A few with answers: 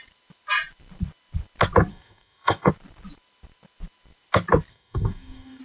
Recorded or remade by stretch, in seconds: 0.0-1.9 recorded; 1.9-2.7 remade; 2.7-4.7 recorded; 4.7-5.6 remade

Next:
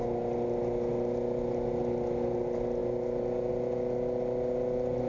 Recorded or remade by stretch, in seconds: 0.0-5.1 recorded

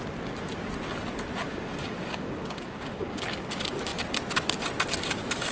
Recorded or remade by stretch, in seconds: 0.0-1.5 recorded; 1.5-3.2 remade; 3.2-5.5 recorded

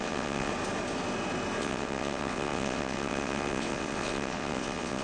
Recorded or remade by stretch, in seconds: 0.0-0.5 remade; 0.5-1.6 recorded; 1.6-5.0 remade

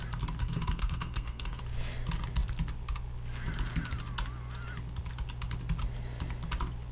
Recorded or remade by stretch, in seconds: 0.0-0.4 recorded; 0.4-1.6 remade; 1.6-6.9 recorded

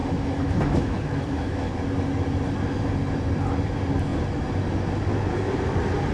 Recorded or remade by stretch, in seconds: 0.0-1.7 remade; 1.7-6.1 recorded